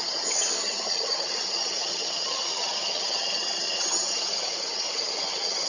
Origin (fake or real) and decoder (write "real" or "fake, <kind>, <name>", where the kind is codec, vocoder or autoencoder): fake, vocoder, HiFi-GAN